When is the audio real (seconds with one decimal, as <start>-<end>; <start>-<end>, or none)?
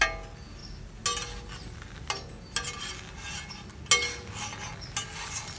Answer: 0.0-5.6